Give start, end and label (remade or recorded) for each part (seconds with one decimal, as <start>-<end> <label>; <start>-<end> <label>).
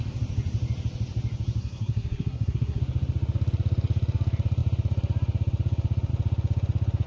0.0-1.6 recorded; 1.6-2.8 remade; 2.8-7.1 recorded